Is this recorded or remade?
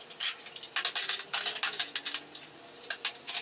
recorded